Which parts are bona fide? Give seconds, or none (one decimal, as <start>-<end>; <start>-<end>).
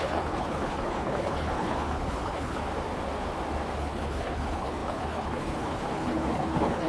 2.6-3.8